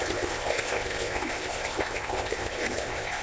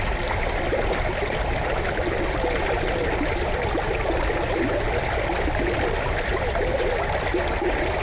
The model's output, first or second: first